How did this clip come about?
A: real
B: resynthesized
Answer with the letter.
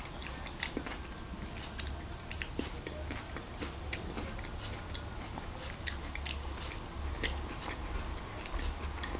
A